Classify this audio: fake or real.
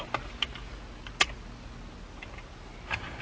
real